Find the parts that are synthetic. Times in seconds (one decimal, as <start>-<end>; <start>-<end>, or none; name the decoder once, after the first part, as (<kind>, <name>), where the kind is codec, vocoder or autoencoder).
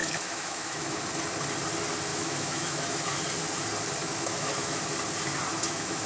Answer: 0.0-1.0 (autoencoder, DAC-VAE); 2.1-3.2; 4.0-4.8; 5.5-6.1